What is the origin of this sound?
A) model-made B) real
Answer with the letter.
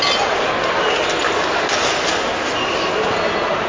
B